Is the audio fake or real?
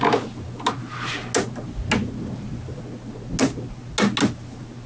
real